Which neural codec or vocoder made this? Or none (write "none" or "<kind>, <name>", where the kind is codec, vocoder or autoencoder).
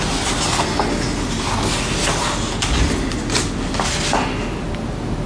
none